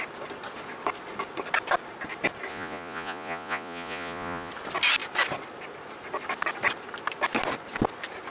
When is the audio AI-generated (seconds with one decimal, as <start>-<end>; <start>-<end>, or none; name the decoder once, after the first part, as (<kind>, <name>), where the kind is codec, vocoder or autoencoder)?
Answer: 2.5-4.5 (vocoder, Vocos)